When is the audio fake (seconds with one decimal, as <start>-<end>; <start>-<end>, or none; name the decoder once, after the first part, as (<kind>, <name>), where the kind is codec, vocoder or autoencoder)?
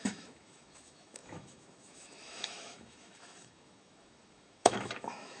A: 0.0-5.4 (autoencoder, DAC-VAE)